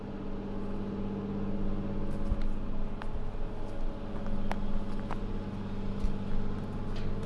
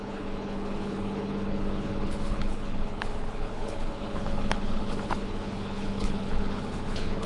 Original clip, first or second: first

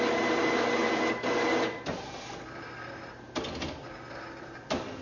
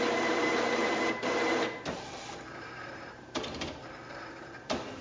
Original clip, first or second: first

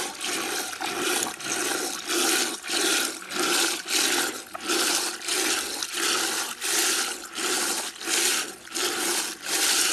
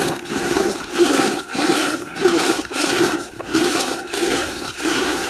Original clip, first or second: first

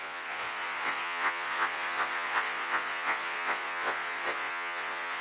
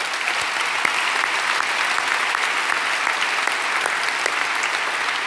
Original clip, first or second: second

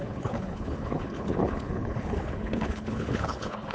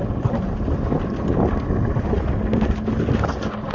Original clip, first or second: second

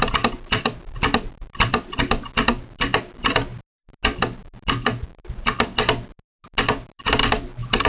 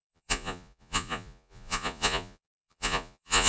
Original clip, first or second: first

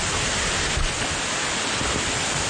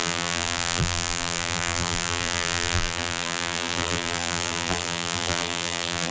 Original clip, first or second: first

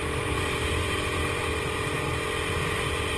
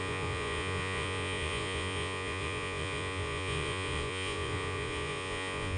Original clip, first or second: first